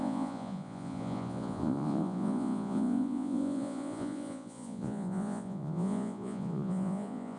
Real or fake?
fake